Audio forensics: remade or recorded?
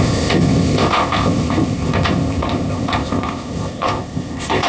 remade